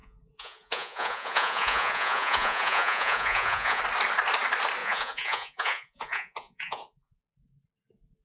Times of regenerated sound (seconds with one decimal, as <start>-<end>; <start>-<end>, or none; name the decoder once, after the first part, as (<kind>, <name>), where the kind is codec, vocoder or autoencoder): 0.0-3.8 (vocoder, Vocos); 4.8-7.2